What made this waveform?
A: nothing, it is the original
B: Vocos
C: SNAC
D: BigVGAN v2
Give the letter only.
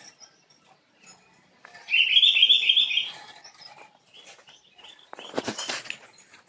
A